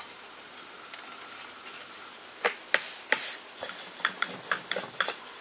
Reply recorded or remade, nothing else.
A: recorded